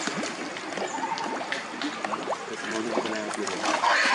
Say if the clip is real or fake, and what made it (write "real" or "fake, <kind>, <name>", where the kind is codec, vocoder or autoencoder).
real